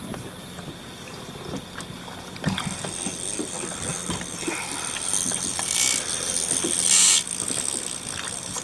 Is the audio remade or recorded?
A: recorded